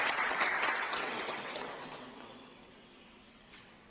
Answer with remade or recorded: remade